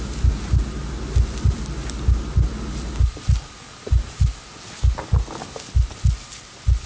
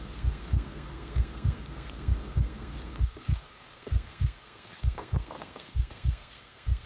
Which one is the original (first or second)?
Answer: first